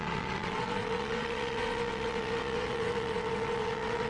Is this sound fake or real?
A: fake